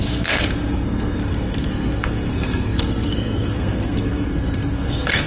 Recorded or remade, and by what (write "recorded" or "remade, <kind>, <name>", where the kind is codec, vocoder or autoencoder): remade, codec, SNAC